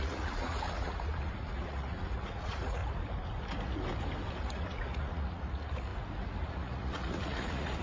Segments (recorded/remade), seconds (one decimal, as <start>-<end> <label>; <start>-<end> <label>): 0.0-2.8 remade; 2.8-4.3 recorded; 4.3-5.9 remade; 5.9-6.4 recorded; 6.4-7.8 remade